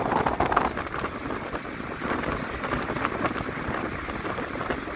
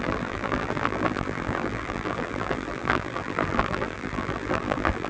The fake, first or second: second